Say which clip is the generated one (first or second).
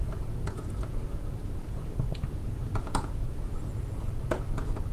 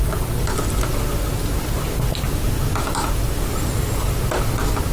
first